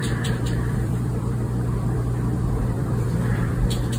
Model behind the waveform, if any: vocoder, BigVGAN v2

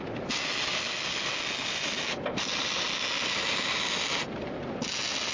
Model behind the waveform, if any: none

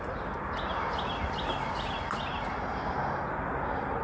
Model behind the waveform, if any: none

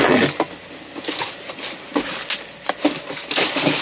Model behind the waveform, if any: none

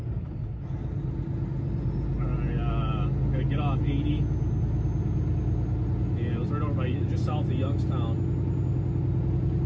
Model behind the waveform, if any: none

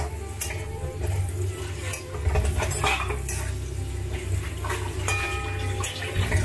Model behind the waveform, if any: none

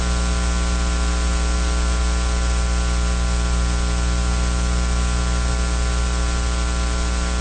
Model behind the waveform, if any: none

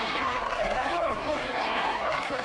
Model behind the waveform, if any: codec, SNAC